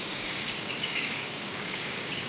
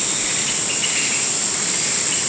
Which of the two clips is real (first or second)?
second